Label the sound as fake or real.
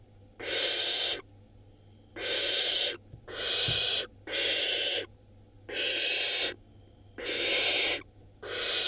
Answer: real